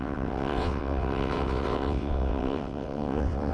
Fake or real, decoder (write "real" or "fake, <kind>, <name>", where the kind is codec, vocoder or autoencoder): fake, vocoder, WaveNeXt